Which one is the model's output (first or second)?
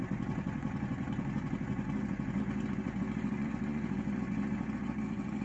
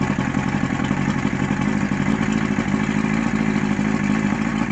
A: first